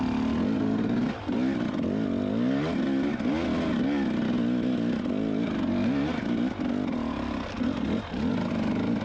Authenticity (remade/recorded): recorded